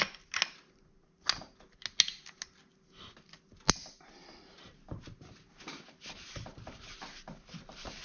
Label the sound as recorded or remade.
recorded